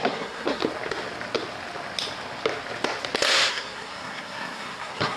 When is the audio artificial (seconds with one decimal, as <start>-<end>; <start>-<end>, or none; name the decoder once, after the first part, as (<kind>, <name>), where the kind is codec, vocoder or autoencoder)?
0.0-0.6 (codec, SNAC); 3.5-5.2